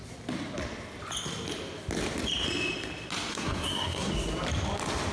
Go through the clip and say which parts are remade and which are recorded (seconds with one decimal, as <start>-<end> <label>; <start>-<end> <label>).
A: 0.0-3.3 recorded; 3.3-4.1 remade; 4.1-5.1 recorded